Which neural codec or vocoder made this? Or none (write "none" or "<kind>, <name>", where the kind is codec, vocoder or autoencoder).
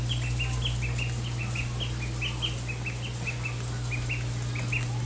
none